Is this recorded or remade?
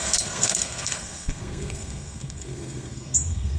remade